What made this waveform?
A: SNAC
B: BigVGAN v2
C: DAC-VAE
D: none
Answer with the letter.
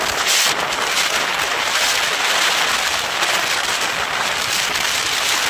D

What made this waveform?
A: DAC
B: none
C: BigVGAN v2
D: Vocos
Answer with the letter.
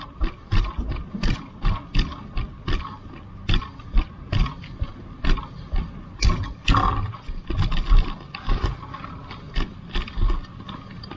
B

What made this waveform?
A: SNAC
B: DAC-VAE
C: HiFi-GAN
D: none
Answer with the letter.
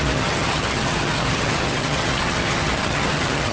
C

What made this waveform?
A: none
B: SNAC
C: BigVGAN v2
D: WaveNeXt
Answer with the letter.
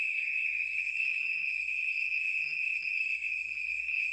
B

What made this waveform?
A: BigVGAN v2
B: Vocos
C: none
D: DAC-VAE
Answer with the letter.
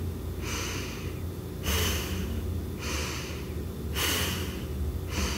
C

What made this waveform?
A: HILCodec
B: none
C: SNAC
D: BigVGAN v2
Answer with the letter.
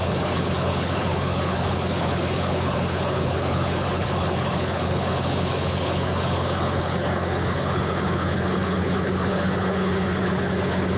A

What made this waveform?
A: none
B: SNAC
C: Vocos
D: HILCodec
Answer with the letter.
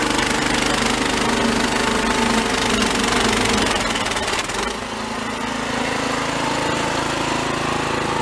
A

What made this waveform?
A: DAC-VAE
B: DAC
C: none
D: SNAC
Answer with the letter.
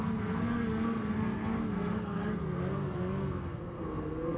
D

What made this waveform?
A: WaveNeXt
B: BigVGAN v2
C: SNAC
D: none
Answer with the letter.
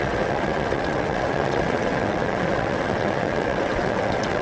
A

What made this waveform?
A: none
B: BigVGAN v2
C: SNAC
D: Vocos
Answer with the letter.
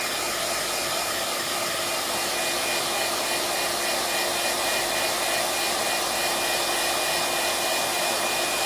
A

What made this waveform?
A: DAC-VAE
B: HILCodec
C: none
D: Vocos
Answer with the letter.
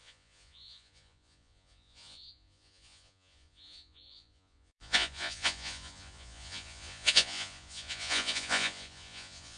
D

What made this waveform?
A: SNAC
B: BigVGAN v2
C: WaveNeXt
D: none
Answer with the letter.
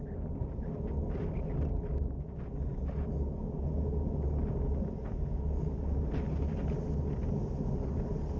D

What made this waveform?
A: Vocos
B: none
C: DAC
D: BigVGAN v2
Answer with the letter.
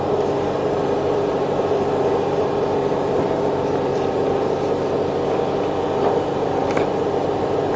B